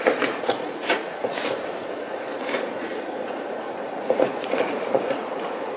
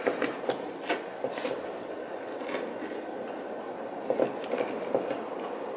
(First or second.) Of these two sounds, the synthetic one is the first